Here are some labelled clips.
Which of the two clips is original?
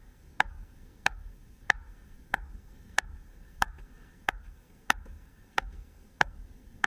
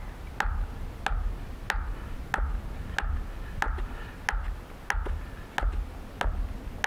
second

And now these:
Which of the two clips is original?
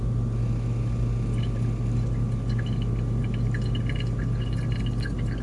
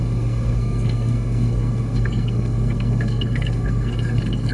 first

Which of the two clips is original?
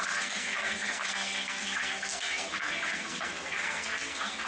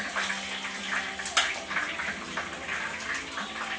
second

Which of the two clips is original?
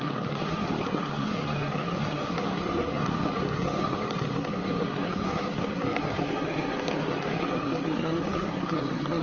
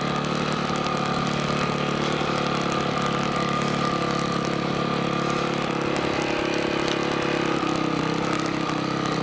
second